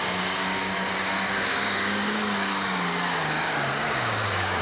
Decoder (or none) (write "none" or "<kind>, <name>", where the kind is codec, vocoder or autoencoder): codec, DAC